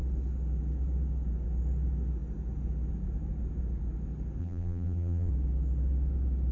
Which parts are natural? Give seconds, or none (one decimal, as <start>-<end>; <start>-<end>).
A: 0.0-4.4; 5.3-6.5